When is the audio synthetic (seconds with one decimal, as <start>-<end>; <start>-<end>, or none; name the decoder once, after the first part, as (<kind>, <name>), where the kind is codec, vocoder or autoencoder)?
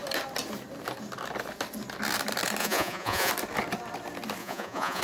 2.6-3.3 (vocoder, Vocos); 4.4-5.0